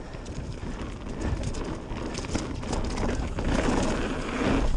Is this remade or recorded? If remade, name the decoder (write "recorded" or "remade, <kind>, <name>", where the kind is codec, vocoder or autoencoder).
recorded